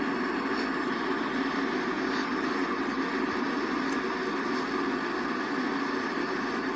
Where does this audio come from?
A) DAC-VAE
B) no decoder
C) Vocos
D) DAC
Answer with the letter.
B